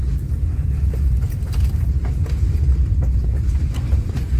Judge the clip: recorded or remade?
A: recorded